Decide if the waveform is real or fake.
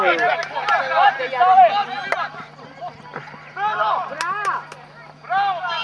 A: real